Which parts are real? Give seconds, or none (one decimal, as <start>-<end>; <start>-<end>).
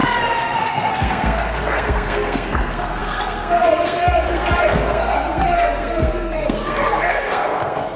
none